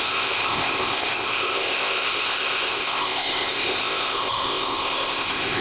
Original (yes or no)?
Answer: no